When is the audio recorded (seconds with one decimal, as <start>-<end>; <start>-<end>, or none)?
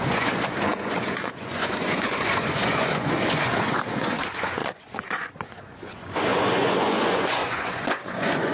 none